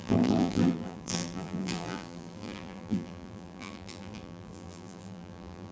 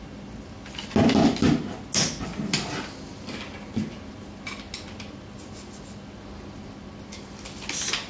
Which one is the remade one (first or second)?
first